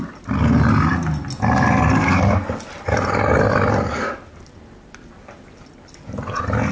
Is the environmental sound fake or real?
real